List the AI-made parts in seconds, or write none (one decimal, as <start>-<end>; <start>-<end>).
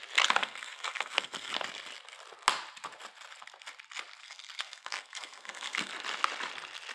0.4-1.5; 4.2-5.9